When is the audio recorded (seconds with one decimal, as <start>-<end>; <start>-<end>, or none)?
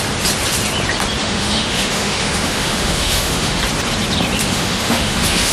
0.0-1.2; 3.6-4.4